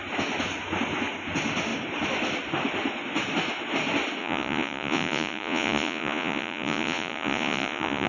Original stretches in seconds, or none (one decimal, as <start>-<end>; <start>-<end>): 0.0-4.2